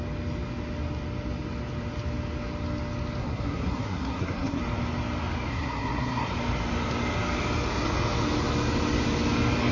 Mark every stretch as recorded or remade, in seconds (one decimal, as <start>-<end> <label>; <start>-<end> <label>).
0.0-3.2 recorded; 3.2-4.6 remade; 4.6-5.5 recorded; 5.5-6.3 remade; 6.3-9.7 recorded